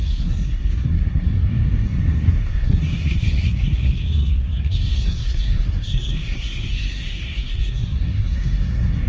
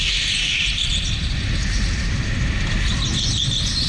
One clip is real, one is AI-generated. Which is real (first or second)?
second